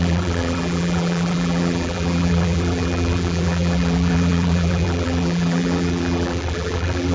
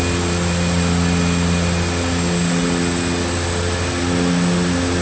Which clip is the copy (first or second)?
first